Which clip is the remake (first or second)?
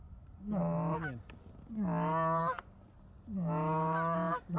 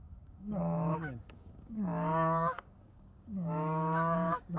second